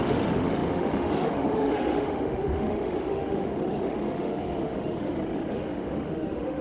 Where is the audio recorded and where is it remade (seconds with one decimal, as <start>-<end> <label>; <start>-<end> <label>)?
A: 0.0-6.6 remade